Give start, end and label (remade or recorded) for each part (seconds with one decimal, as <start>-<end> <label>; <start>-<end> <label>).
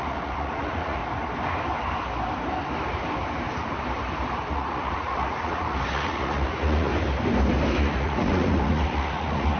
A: 0.0-1.0 remade; 1.0-4.5 recorded; 4.5-6.9 remade; 6.9-7.8 recorded; 7.8-9.6 remade